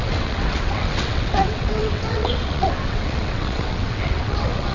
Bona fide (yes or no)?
no